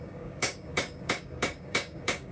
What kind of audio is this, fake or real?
fake